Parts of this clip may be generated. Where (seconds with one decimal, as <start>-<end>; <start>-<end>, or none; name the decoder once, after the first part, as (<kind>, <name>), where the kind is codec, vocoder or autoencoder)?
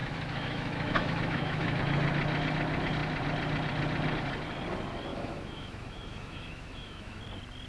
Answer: 0.0-1.8 (autoencoder, DAC-VAE); 5.1-7.2